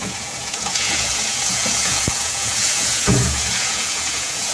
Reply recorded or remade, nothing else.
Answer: remade